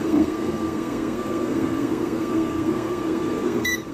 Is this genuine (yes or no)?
no